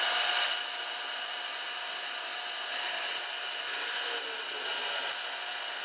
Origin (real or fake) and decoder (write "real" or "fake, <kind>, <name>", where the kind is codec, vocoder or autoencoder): real